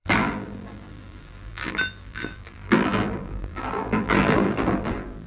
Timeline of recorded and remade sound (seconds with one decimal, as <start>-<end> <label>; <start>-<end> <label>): 0.0-5.3 remade

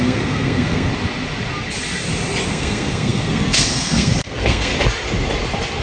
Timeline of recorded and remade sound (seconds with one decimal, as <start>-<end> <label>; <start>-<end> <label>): 0.0-0.9 remade; 0.9-2.5 recorded; 2.5-4.7 remade; 4.7-5.8 recorded

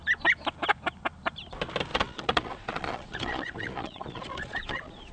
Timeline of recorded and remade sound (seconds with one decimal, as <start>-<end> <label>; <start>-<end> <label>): 0.0-1.9 recorded; 1.9-5.1 remade